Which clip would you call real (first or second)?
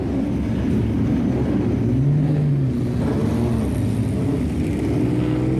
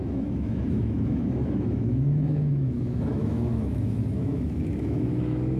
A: first